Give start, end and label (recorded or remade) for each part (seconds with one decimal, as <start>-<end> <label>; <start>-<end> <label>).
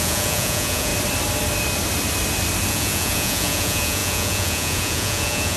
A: 0.0-0.9 remade; 0.9-2.7 recorded; 2.7-5.6 remade